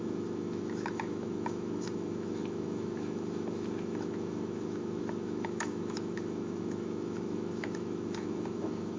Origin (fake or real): fake